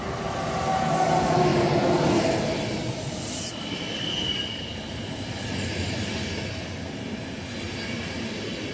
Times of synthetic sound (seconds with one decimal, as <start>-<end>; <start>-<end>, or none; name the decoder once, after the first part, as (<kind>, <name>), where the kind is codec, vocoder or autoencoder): none